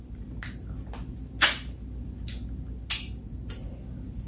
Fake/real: real